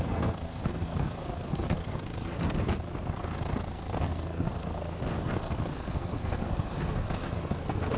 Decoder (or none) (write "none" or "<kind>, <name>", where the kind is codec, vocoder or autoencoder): codec, SNAC